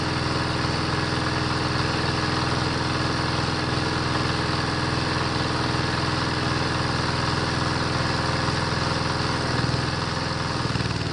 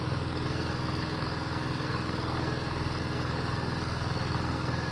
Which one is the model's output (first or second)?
second